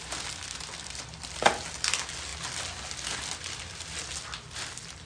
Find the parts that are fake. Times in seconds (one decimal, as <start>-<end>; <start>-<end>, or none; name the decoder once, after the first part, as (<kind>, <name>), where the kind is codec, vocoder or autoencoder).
none